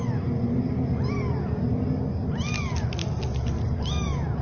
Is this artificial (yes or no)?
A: no